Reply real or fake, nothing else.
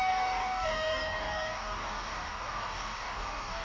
fake